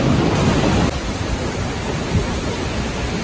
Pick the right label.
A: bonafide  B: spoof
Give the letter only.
A